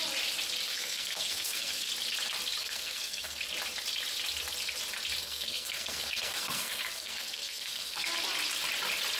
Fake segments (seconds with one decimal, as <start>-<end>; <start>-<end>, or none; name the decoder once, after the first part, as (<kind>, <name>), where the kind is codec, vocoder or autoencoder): 0.7-1.9 (codec, SNAC); 2.6-3.4; 5.2-8.1